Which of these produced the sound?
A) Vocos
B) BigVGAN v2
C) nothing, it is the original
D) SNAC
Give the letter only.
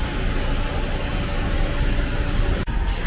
C